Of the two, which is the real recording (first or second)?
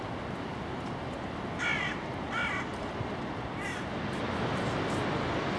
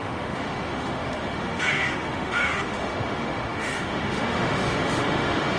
first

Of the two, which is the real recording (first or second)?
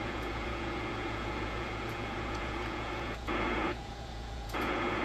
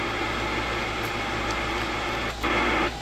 second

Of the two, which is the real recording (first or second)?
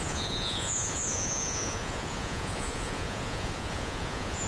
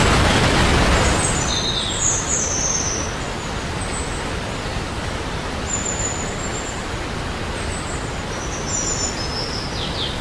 second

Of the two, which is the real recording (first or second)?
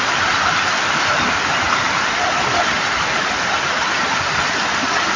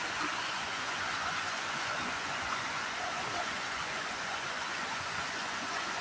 first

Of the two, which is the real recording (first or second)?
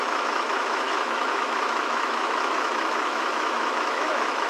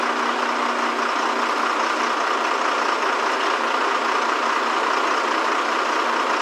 second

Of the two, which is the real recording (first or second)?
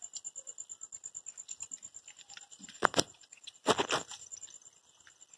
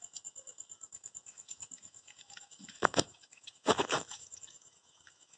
first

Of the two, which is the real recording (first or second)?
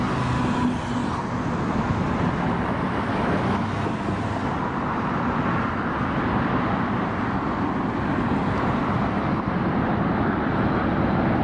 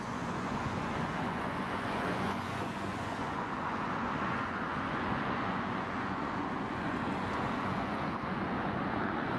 first